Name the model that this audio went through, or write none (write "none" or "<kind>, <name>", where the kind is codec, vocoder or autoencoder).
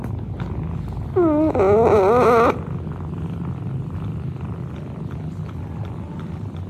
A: none